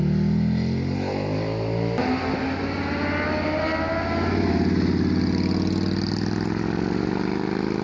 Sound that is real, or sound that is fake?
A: real